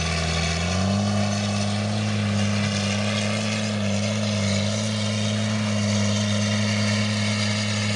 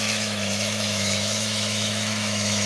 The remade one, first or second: second